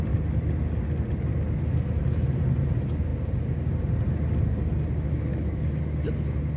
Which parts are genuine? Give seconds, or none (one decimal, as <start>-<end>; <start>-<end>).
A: 0.0-5.3; 5.8-6.6